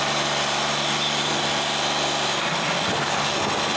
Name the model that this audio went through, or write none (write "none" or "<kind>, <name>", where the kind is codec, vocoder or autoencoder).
none